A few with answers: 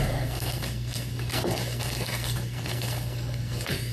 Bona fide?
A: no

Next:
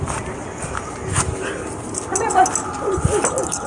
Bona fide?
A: yes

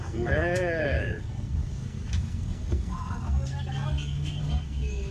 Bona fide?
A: no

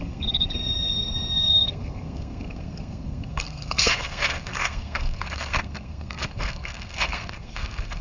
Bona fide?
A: no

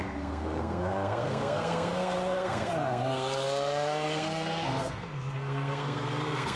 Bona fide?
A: no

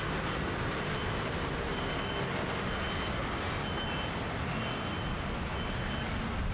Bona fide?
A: yes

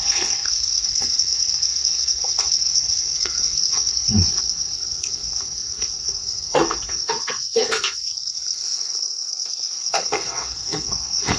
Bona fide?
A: no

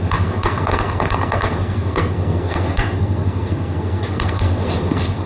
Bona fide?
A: no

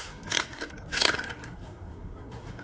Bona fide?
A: no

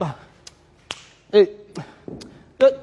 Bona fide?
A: yes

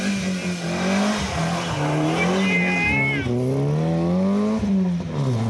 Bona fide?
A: yes